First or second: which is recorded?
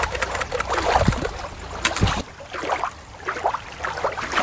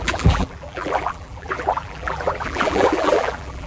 first